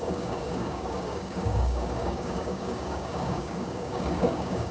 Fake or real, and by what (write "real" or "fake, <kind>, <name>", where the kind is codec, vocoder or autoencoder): fake, codec, DAC